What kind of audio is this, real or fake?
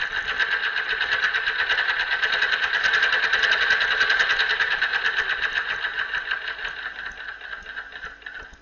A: real